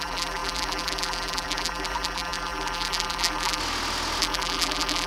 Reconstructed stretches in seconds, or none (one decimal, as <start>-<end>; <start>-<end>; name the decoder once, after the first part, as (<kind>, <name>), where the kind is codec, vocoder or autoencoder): 0.0-3.6 (vocoder, BigVGAN v2); 4.2-5.1